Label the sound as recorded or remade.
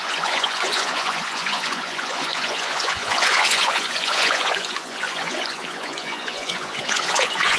remade